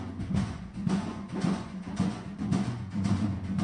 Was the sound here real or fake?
fake